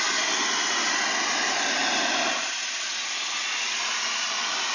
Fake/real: real